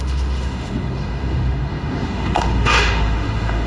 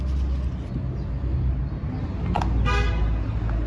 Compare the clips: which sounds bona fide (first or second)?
second